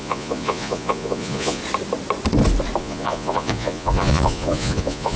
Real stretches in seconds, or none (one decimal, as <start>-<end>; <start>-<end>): 1.6-2.8